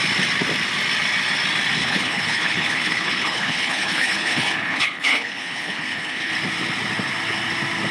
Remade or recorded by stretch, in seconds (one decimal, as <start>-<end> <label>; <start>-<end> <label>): 0.0-1.8 recorded; 1.8-6.3 remade; 6.3-7.9 recorded